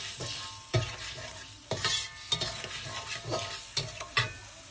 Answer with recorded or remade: recorded